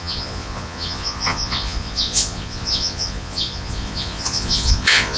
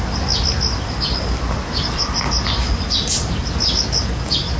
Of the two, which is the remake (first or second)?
first